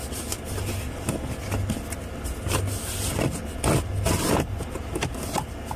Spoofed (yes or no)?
no